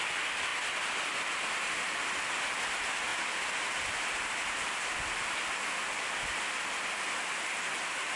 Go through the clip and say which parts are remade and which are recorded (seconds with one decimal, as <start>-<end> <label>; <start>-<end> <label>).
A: 0.0-8.2 recorded